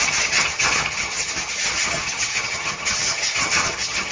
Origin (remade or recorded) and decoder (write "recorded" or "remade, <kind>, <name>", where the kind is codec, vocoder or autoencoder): remade, vocoder, HiFi-GAN